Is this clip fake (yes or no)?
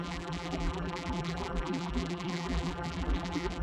yes